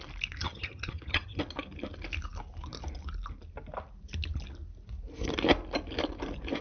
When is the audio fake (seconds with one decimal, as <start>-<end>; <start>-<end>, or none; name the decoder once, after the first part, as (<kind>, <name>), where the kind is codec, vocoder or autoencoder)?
0.4-1.4 (vocoder, HiFi-GAN)